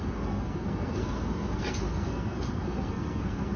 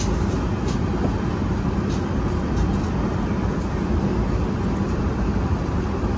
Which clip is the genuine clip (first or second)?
second